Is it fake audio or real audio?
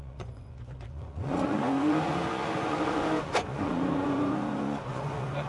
fake